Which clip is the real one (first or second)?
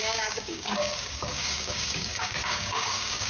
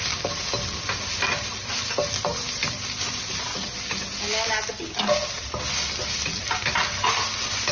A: second